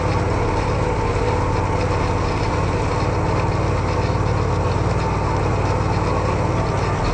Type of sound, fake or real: real